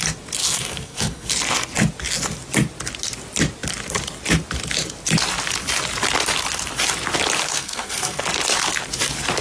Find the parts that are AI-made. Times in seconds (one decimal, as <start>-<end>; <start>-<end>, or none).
0.4-1.3; 7.4-8.2